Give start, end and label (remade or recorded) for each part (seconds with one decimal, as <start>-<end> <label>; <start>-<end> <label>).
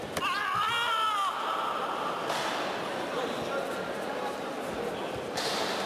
0.0-5.9 recorded